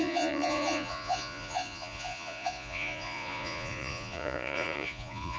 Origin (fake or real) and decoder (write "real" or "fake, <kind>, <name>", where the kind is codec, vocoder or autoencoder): fake, vocoder, Vocos